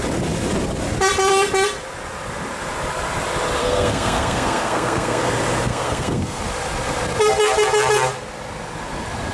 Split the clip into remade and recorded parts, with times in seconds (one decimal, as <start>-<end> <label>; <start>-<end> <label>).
0.0-3.6 recorded; 3.6-5.3 remade; 5.3-5.7 recorded; 5.7-6.4 remade; 6.4-9.3 recorded